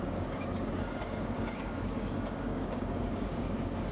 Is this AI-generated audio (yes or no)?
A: yes